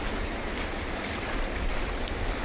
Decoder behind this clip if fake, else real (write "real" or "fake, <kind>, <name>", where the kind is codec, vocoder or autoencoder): real